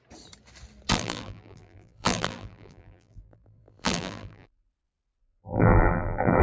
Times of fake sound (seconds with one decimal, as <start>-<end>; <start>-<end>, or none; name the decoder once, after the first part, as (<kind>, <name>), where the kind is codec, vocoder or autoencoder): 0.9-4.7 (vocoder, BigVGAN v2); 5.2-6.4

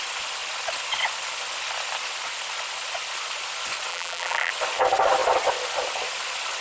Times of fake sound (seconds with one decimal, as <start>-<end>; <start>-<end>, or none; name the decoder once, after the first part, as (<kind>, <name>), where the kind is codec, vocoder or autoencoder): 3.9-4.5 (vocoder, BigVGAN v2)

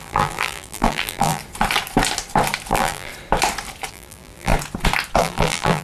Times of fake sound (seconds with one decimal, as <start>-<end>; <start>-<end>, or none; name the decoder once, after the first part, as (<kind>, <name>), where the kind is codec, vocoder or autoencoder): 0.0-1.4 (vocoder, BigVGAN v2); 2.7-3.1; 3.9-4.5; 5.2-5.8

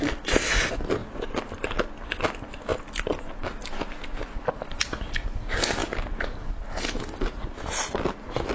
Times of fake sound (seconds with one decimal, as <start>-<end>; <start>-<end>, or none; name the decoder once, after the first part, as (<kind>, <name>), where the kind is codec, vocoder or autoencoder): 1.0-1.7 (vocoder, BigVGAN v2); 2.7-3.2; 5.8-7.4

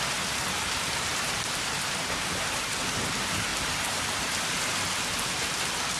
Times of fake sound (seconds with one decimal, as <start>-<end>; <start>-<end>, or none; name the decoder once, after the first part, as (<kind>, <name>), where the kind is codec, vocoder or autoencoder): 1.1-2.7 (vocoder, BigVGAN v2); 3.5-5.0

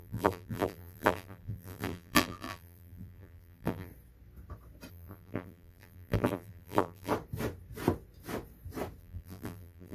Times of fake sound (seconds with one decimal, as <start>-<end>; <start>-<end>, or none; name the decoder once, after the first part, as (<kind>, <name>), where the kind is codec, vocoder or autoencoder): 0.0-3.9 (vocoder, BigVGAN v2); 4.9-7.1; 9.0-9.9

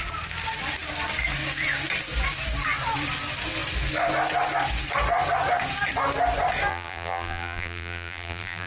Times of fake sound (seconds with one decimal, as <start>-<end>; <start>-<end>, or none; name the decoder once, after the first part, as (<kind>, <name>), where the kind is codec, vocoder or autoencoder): 6.7-8.7 (vocoder, BigVGAN v2)

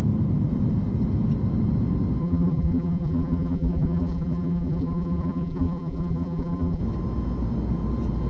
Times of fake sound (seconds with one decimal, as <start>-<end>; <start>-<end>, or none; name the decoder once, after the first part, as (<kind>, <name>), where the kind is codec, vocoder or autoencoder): 2.2-6.8 (vocoder, BigVGAN v2)